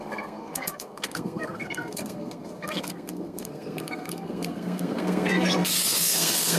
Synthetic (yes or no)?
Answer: yes